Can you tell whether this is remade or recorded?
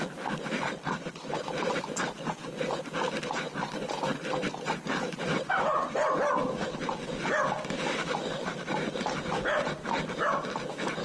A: recorded